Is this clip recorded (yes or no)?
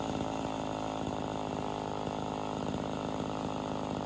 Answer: yes